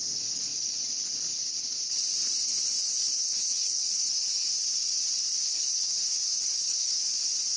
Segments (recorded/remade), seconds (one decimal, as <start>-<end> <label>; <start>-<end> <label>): 0.0-0.7 remade; 0.7-2.5 recorded; 2.5-4.5 remade; 4.5-5.5 recorded; 5.5-7.0 remade; 7.0-7.6 recorded